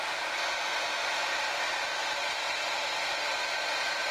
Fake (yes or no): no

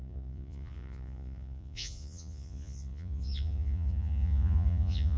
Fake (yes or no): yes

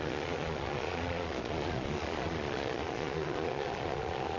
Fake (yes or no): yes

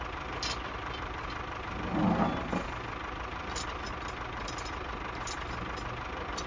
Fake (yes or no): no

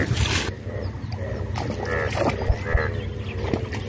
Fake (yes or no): no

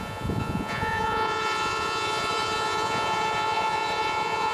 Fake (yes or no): yes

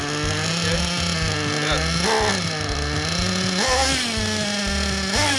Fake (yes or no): no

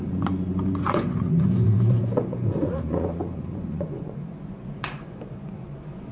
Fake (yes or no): yes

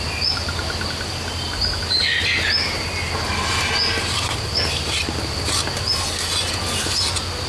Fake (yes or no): no